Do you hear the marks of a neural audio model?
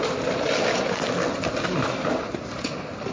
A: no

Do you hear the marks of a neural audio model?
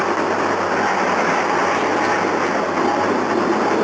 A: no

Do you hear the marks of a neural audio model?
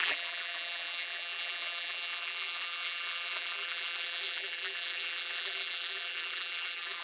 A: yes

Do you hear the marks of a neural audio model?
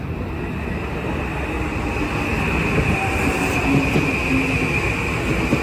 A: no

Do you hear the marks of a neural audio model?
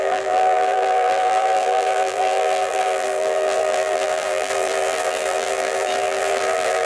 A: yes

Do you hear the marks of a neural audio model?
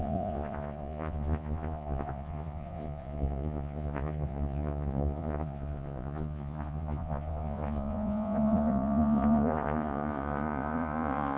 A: yes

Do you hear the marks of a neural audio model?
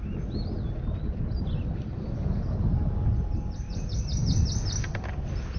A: no